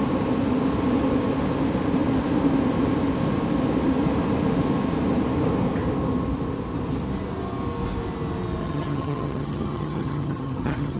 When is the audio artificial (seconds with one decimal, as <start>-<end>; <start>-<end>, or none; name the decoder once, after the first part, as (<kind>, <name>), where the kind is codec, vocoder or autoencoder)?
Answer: 8.6-11.0 (vocoder, HiFi-GAN)